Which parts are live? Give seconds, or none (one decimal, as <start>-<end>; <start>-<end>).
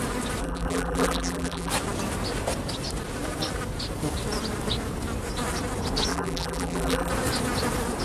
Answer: 0.0-0.4; 1.7-6.1; 7.1-8.0